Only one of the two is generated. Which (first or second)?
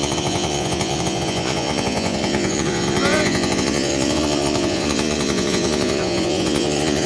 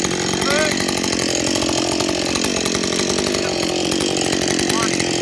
first